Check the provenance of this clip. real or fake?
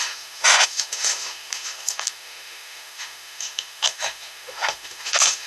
fake